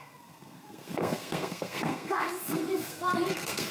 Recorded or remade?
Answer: remade